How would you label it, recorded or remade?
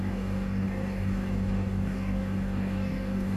remade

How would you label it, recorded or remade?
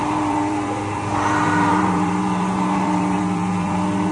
remade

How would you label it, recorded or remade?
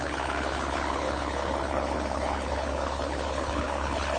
remade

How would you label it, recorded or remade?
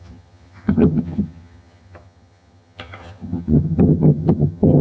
remade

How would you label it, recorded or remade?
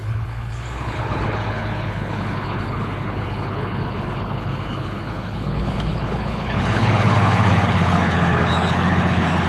remade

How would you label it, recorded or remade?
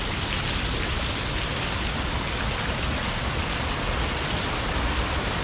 recorded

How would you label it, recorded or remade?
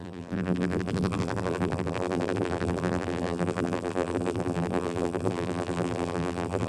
remade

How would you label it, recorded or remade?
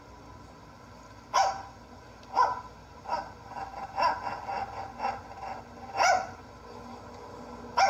recorded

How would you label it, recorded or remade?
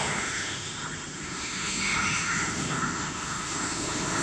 remade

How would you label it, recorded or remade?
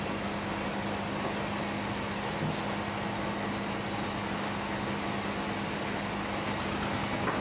recorded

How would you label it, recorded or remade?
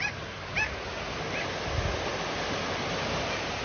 recorded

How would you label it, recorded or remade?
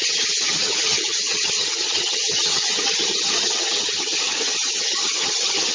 remade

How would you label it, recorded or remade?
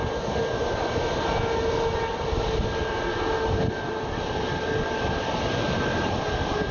recorded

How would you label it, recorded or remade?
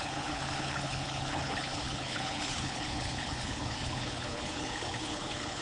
remade